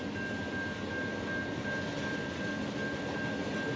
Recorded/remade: recorded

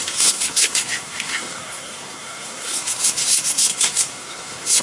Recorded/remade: remade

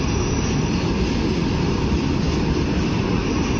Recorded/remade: recorded